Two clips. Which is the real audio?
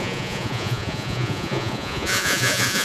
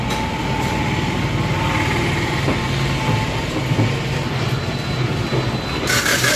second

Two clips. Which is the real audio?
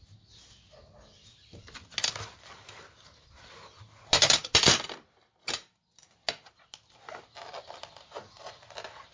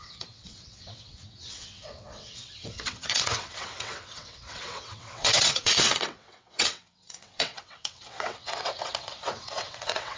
first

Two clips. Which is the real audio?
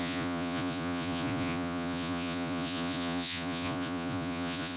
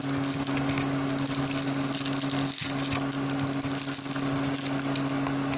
second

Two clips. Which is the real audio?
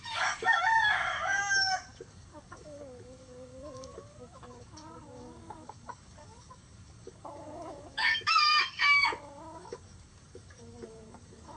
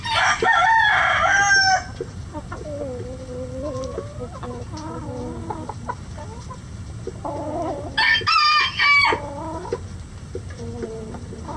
second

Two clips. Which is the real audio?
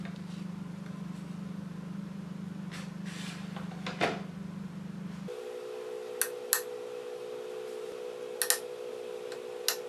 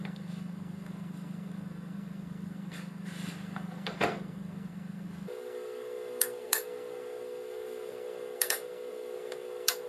first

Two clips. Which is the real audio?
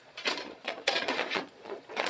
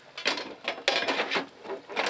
second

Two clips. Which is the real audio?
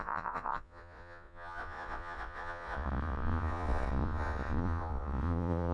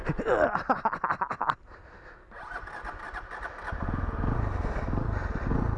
second